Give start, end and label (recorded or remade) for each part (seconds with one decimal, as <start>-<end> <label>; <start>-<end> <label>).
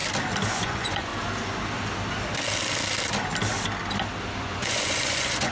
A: 0.0-0.5 recorded; 0.5-1.1 remade; 1.1-4.4 recorded; 4.4-5.5 remade